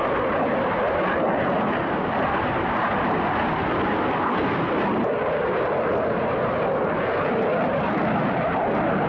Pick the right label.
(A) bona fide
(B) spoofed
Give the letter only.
A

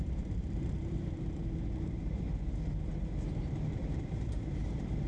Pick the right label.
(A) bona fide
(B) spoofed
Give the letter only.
B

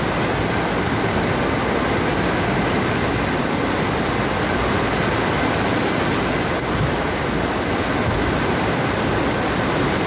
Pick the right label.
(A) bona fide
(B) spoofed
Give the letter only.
A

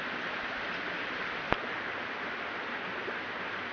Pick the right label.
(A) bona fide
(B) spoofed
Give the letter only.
A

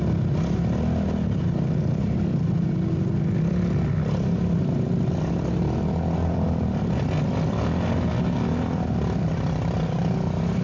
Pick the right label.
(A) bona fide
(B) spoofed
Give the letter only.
A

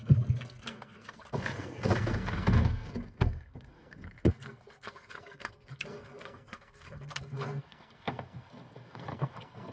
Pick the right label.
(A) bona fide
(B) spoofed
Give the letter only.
B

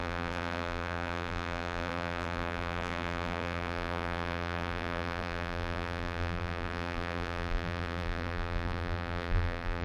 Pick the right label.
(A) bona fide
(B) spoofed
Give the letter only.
B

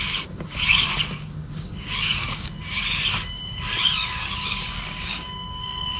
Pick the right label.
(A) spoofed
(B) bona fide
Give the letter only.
A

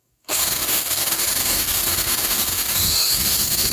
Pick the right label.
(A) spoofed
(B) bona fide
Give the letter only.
A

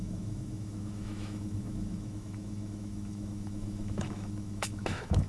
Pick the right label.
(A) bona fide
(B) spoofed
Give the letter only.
B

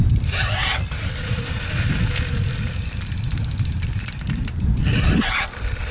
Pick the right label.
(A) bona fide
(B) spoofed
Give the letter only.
A